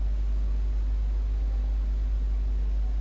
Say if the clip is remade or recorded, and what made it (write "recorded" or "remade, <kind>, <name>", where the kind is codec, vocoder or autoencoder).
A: recorded